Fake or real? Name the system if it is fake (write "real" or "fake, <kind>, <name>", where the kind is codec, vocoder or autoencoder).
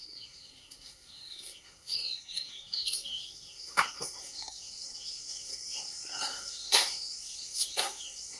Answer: fake, codec, SNAC